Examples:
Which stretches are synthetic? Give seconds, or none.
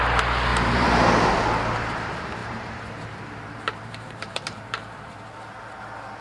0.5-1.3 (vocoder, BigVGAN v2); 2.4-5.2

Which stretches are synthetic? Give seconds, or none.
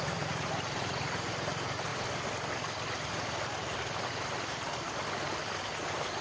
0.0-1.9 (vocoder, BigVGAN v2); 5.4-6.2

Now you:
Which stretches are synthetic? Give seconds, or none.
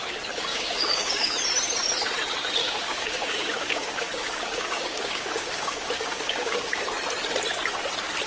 0.5-1.3 (codec, DAC); 2.6-6.8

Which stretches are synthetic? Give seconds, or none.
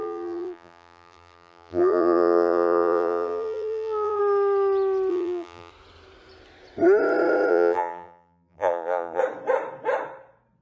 0.0-4.2 (vocoder, BigVGAN v2); 5.1-5.7; 7.5-9.2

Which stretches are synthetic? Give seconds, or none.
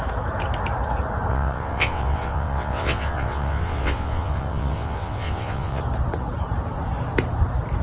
1.3-5.8 (vocoder, WaveNeXt)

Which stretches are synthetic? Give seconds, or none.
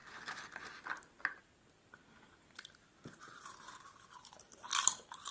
none